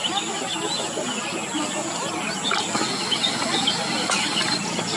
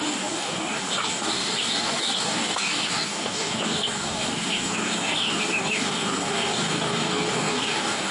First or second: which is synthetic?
second